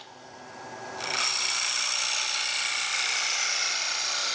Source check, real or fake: real